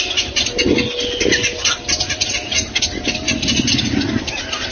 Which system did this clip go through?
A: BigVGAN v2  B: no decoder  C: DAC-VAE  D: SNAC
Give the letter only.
B